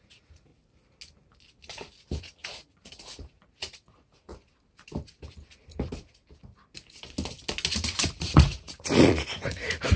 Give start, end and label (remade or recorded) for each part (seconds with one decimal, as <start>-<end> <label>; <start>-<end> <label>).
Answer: 0.0-0.5 remade; 0.5-2.2 recorded; 2.2-4.3 remade; 4.3-8.2 recorded; 8.2-10.0 remade